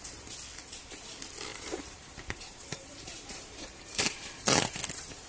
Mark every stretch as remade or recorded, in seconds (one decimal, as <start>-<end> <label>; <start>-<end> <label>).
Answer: 0.0-1.5 recorded; 1.5-4.7 remade; 4.7-5.3 recorded